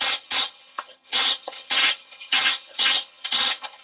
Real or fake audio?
fake